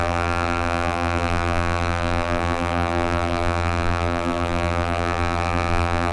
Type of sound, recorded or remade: remade